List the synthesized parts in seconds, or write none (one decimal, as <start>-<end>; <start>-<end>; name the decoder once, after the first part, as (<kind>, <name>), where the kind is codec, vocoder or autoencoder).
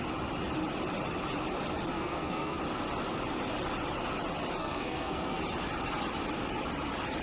1.9-2.6 (codec, SNAC); 4.6-5.4